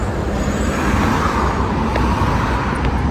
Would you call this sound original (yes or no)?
yes